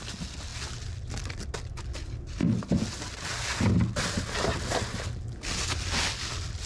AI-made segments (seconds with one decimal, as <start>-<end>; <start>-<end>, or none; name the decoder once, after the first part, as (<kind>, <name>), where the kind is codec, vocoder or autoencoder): none